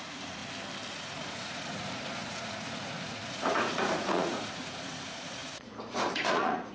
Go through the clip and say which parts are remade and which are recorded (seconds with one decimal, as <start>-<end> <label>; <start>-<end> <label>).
0.0-0.4 remade; 0.4-0.9 recorded; 0.9-6.7 remade